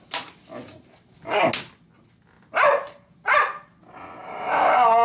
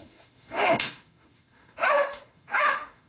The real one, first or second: first